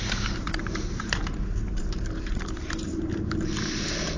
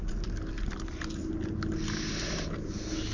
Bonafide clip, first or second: second